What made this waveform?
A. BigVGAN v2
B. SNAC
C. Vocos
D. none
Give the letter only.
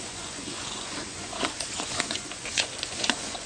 C